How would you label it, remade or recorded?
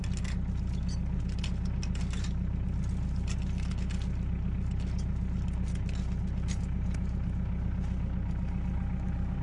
recorded